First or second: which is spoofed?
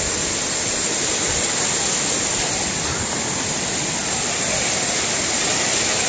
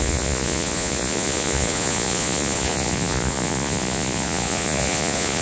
second